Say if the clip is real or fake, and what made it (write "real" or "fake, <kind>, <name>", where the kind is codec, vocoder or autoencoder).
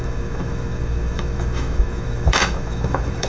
fake, autoencoder, DAC-VAE